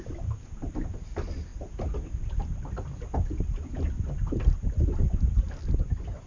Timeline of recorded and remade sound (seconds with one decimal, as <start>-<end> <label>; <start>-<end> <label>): 0.0-6.3 recorded

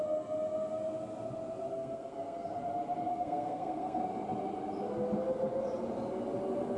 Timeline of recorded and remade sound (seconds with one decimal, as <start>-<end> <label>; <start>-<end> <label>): 0.0-1.7 recorded; 1.7-2.5 remade; 2.5-3.1 recorded; 3.1-4.0 remade; 4.0-6.8 recorded

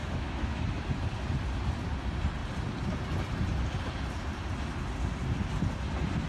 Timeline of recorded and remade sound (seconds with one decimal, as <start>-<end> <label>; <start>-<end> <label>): 0.0-0.6 remade; 0.6-6.3 recorded

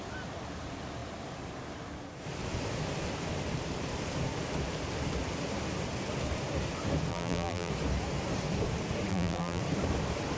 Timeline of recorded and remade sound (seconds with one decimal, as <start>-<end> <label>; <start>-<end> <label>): 0.0-7.1 recorded; 7.1-7.7 remade; 7.7-9.1 recorded; 9.1-9.6 remade; 9.6-10.4 recorded

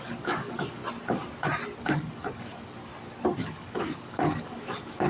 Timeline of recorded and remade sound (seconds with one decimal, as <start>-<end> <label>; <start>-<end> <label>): 0.0-0.8 remade; 0.8-1.8 recorded; 1.8-2.9 remade; 2.9-3.4 recorded; 3.4-5.1 remade

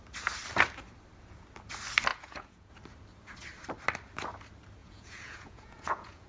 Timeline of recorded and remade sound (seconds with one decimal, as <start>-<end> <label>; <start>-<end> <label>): 0.0-2.1 recorded; 2.1-2.7 remade; 2.7-4.8 recorded; 4.8-6.3 remade

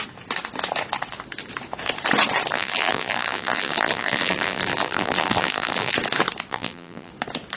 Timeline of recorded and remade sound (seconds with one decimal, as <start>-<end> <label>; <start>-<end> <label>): 0.0-2.5 recorded; 2.5-5.9 remade; 5.9-6.5 recorded; 6.5-7.1 remade; 7.1-7.6 recorded

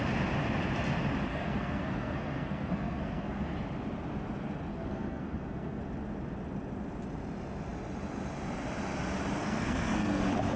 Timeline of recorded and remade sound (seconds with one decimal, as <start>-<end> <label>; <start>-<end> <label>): 0.0-1.3 recorded; 1.3-3.4 remade; 3.4-4.7 recorded; 4.7-5.8 remade; 5.8-9.4 recorded; 9.4-10.2 remade; 10.2-10.6 recorded